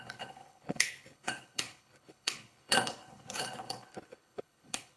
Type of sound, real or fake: fake